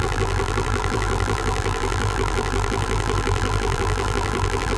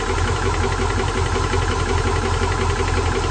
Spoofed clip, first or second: first